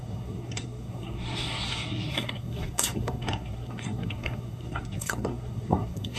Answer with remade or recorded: remade